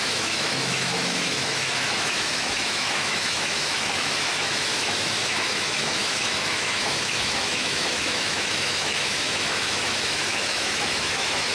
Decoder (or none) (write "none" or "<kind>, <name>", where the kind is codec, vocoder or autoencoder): autoencoder, DAC-VAE